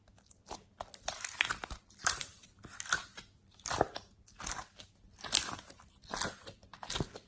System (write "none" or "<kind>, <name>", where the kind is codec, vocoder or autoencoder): none